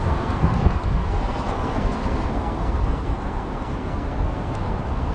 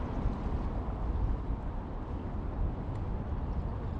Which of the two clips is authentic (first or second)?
second